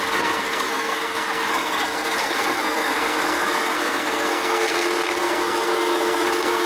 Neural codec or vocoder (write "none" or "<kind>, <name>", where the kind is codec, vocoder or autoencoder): codec, SNAC